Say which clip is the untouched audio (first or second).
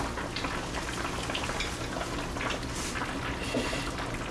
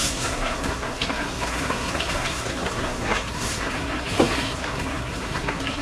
first